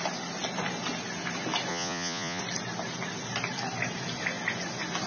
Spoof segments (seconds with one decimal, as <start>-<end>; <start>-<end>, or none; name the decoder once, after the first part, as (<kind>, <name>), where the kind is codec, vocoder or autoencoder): 1.7-2.4 (vocoder, Vocos)